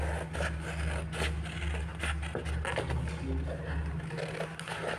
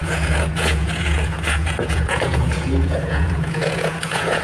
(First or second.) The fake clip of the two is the second